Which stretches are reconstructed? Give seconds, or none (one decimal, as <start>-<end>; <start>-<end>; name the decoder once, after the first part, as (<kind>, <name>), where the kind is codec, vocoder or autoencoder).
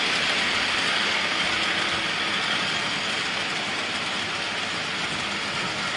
none